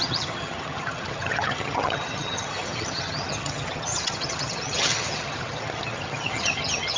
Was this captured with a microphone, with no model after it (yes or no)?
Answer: no